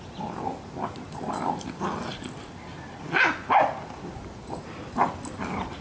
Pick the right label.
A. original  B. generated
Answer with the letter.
A